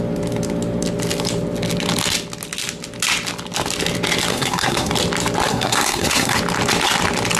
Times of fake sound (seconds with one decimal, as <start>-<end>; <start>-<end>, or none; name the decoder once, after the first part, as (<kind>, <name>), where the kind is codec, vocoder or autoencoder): 4.3-4.9 (codec, SNAC); 5.5-6.4